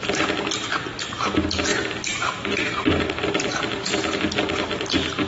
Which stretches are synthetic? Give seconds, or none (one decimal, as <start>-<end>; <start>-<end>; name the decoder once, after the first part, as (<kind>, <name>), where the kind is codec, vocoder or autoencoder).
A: 1.7-3.5 (vocoder, BigVGAN v2)